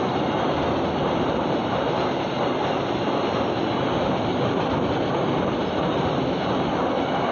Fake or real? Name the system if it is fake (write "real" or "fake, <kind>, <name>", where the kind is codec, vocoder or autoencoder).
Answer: real